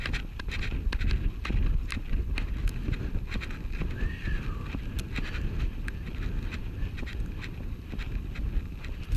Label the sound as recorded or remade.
recorded